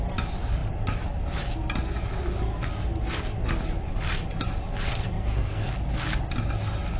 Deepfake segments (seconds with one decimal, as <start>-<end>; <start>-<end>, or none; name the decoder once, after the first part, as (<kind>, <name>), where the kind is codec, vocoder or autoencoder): 4.9-5.7 (codec, SNAC)